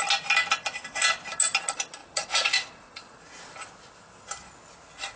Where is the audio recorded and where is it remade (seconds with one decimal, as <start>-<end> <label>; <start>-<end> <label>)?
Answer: 0.0-2.0 recorded; 2.0-3.3 remade; 3.3-5.2 recorded